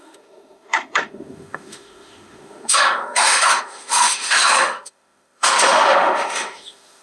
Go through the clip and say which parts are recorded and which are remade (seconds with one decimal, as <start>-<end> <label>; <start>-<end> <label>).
0.0-7.0 remade